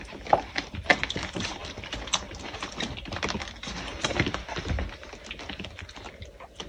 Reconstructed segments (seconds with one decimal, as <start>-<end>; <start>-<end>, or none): none